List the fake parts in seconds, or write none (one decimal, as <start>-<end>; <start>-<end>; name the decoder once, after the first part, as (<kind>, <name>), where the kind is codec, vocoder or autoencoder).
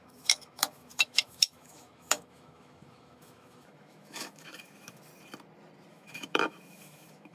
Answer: 0.0-5.1 (autoencoder, DAC-VAE); 5.9-7.3